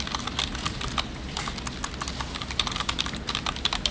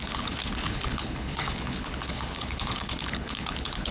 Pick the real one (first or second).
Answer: first